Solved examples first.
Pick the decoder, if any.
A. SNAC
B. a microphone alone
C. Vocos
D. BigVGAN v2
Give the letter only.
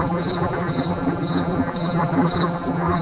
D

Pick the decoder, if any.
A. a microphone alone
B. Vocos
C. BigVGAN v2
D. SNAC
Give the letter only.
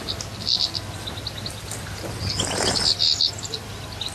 A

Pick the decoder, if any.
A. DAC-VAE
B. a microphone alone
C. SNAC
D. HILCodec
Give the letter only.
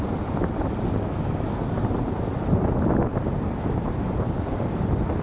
B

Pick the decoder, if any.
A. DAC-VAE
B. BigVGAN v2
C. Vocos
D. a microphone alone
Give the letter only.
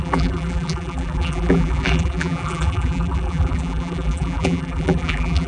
B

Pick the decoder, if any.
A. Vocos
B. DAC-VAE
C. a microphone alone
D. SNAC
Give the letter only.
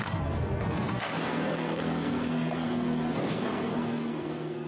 D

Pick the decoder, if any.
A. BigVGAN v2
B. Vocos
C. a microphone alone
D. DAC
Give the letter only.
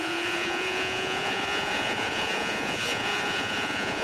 B